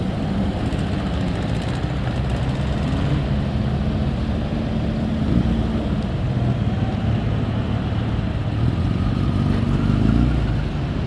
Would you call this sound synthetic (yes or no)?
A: no